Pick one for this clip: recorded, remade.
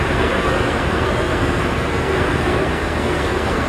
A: remade